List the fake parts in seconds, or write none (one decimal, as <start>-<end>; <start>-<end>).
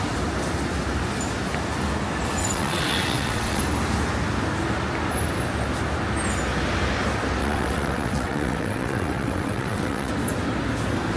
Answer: 2.4-3.6; 7.4-10.1